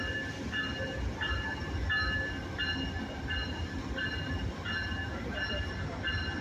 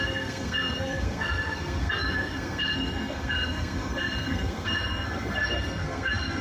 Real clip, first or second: first